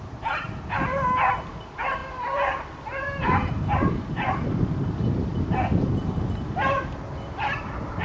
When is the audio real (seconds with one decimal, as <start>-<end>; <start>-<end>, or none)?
0.0-8.0